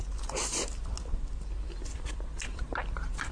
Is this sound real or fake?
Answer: real